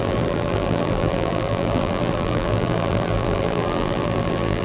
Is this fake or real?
fake